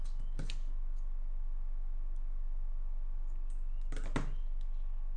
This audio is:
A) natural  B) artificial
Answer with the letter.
A